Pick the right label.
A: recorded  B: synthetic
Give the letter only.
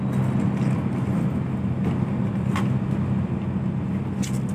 A